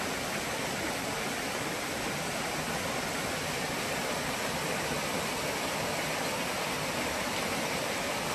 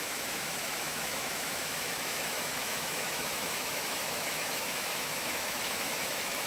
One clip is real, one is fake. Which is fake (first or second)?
second